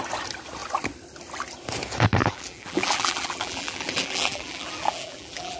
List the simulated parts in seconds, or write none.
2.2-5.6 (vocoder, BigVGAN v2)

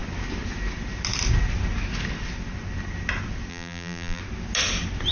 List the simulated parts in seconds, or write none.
3.5-4.2 (vocoder, BigVGAN v2)

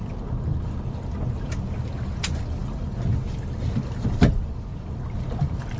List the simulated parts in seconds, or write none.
none

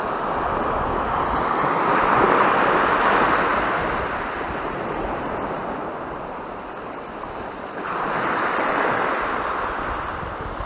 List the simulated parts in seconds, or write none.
3.5-5.6 (vocoder, BigVGAN v2)

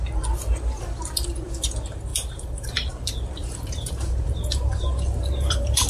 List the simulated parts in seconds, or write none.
2.1-2.9 (vocoder, BigVGAN v2); 3.4-5.9

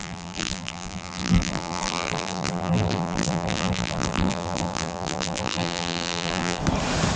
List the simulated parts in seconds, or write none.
0.0-6.6 (vocoder, BigVGAN v2)

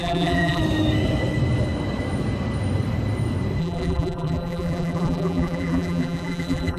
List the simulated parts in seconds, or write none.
0.0-0.6 (vocoder, BigVGAN v2); 3.6-6.8

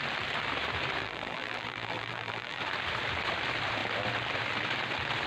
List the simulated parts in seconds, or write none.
1.0-2.6 (vocoder, BigVGAN v2)